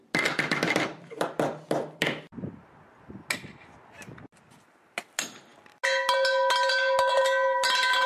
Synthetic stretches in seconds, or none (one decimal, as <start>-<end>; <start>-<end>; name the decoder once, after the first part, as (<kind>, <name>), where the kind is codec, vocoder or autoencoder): none